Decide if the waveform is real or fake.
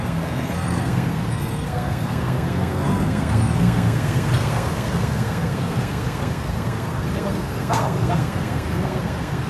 fake